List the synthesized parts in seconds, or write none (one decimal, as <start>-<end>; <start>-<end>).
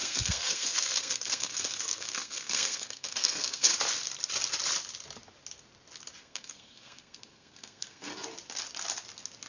0.0-3.7; 6.2-8.1